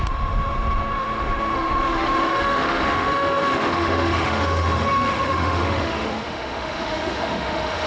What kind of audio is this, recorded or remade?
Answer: remade